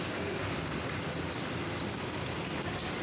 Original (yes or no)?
yes